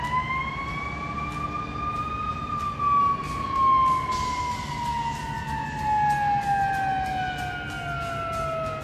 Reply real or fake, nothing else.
real